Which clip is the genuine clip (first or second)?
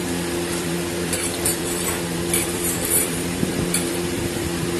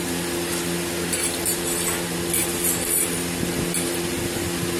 second